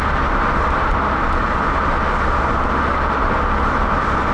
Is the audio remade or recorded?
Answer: recorded